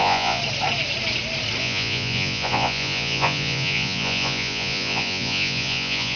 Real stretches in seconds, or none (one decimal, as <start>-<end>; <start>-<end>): 0.4-1.6